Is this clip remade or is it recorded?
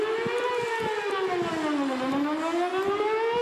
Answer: recorded